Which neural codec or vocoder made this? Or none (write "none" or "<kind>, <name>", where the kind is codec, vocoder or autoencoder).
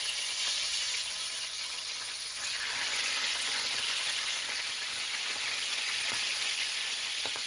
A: vocoder, Vocos